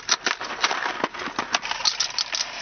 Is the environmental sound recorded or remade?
recorded